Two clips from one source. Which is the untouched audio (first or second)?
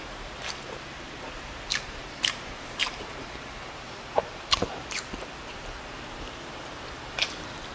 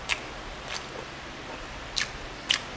second